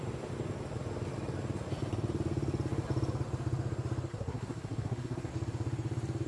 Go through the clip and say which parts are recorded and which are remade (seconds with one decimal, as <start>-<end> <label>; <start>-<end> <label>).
0.0-4.1 recorded; 4.1-5.3 remade; 5.3-6.3 recorded